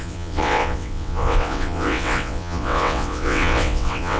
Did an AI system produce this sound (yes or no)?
yes